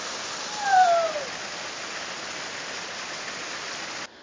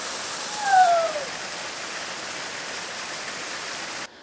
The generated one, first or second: second